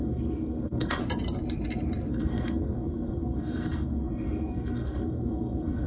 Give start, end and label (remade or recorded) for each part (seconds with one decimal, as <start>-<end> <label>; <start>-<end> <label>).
0.0-1.0 remade; 1.0-2.1 recorded; 2.1-5.9 remade